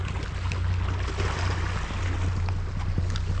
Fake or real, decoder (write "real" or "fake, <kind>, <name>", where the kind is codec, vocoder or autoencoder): real